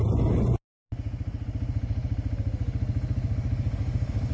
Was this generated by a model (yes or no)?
no